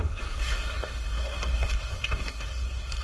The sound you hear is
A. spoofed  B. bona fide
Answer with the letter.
A